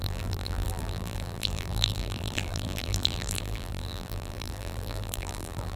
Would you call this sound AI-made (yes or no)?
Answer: yes